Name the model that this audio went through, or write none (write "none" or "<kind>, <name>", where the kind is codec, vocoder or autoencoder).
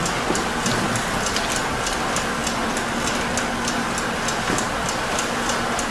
none